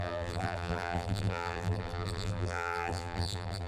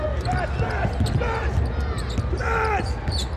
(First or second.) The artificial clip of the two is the first